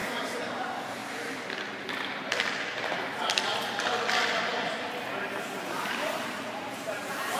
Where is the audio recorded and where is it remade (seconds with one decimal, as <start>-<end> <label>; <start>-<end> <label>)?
0.0-1.0 remade; 1.0-5.4 recorded; 5.4-7.4 remade